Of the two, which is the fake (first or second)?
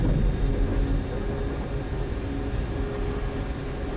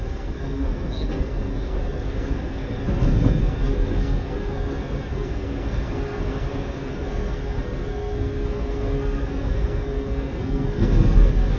second